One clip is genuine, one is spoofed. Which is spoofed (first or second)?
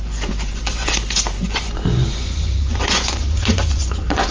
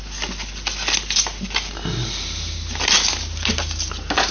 first